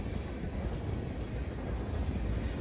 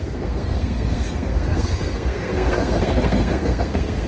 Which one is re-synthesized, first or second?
second